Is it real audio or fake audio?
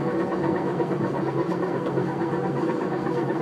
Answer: fake